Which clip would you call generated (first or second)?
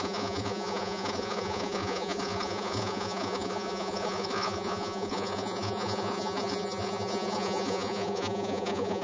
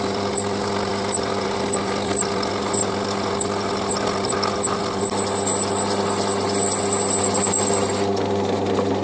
first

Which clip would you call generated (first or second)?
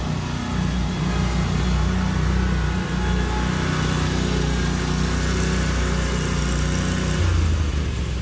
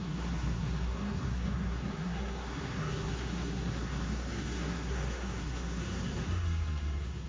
second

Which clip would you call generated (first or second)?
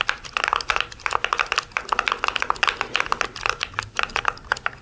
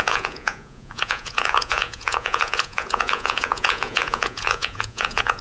second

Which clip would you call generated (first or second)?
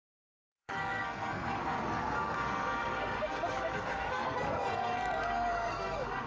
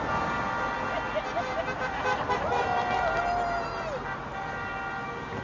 first